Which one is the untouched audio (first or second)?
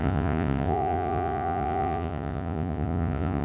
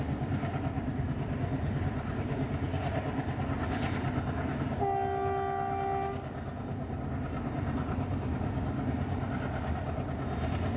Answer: second